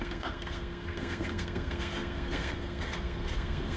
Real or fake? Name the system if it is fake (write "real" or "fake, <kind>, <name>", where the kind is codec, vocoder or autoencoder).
fake, codec, SNAC